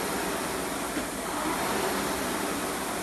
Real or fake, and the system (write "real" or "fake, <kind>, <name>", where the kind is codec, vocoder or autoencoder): real